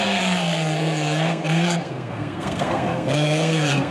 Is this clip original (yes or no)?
no